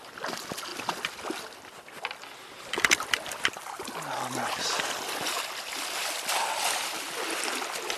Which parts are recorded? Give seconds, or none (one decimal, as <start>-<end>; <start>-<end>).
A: 0.0-8.0